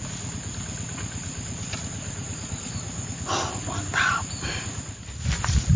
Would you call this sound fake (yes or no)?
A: no